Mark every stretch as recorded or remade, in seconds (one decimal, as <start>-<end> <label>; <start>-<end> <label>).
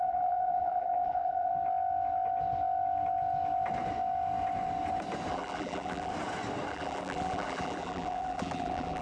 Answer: 0.0-1.5 remade; 1.5-5.3 recorded; 5.3-6.1 remade; 6.1-6.7 recorded; 6.7-9.0 remade